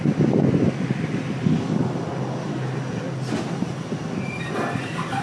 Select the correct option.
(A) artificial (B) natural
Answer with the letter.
B